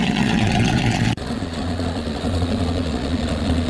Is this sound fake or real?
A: fake